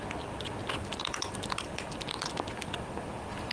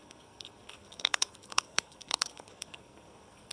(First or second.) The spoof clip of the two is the second